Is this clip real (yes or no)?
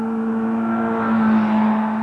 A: yes